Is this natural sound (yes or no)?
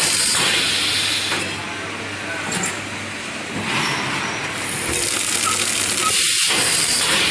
yes